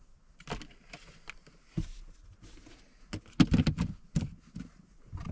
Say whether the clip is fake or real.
real